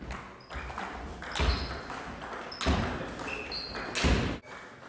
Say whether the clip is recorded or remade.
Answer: recorded